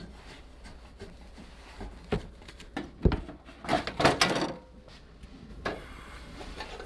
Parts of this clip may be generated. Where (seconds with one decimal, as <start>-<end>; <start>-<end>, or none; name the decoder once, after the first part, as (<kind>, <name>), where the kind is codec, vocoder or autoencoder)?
5.5-6.9 (vocoder, BigVGAN v2)